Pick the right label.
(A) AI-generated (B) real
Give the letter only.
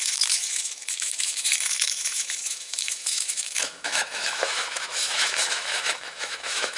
A